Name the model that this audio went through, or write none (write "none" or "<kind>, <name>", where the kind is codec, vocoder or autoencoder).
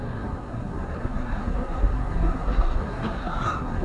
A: codec, SNAC